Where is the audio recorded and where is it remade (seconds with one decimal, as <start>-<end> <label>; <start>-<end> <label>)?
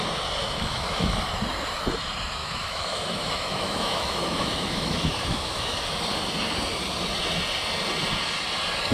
0.0-0.4 recorded; 0.4-1.1 remade; 1.1-2.4 recorded; 2.4-5.8 remade; 5.8-8.9 recorded